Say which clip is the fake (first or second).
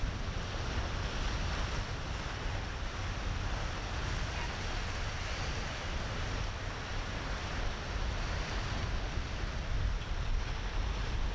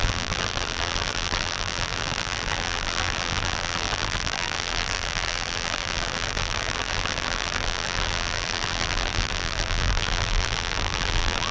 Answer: second